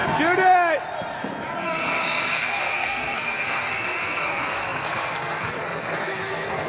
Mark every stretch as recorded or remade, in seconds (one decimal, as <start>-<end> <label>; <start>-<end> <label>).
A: 0.0-1.6 recorded; 1.6-6.7 remade